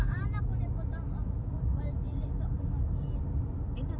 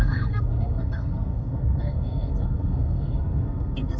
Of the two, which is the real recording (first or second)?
first